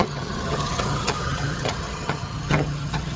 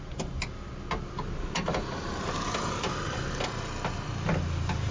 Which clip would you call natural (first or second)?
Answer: second